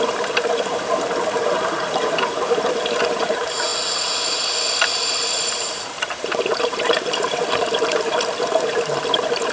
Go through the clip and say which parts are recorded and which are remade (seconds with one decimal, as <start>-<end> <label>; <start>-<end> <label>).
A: 0.0-3.7 remade; 3.7-4.9 recorded; 4.9-9.5 remade